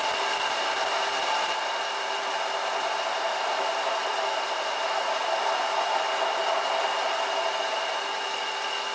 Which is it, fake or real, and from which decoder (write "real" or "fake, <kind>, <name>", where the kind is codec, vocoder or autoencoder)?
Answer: real